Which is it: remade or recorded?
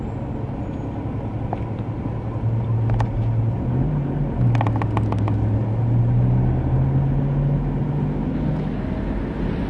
recorded